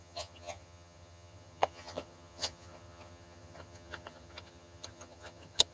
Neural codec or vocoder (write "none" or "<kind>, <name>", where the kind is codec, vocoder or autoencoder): vocoder, HiFi-GAN